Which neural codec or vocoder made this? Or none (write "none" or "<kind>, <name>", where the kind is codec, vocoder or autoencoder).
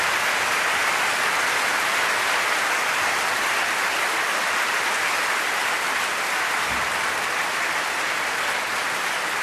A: none